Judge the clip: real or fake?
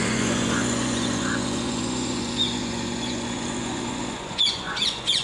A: fake